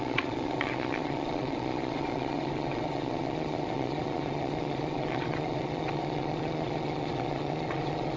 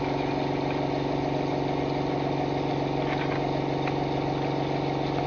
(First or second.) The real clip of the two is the second